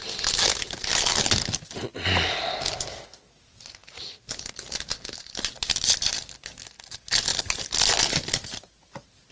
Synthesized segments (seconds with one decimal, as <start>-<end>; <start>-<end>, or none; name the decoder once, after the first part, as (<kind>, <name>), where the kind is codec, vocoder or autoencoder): none